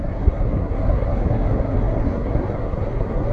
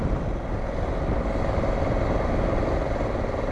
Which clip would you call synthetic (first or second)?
first